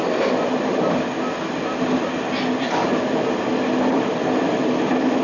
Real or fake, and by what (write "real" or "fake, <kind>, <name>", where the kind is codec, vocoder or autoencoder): real